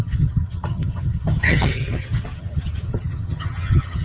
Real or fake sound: fake